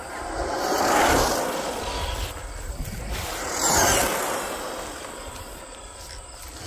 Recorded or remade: recorded